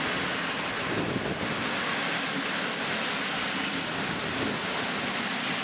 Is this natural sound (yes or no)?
yes